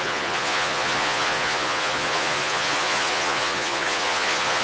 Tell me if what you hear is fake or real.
fake